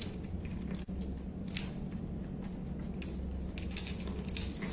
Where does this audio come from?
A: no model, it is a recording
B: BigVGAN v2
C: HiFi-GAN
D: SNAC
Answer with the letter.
A